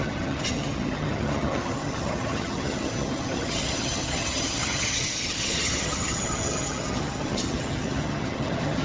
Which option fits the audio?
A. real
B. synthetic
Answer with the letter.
B